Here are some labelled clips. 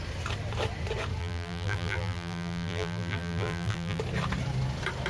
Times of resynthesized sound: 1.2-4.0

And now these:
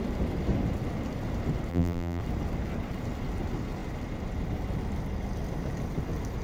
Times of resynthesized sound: 1.7-2.2